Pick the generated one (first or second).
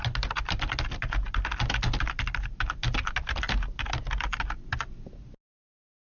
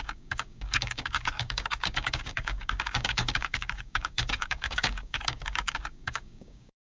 second